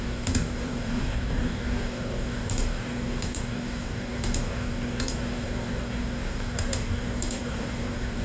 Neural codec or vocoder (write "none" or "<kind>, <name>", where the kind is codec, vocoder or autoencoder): codec, DAC